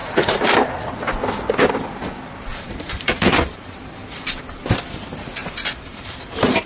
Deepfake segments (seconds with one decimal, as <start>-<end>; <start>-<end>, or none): 0.0-0.7; 2.5-4.4; 5.4-6.7